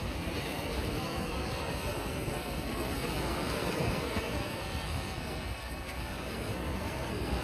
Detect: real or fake fake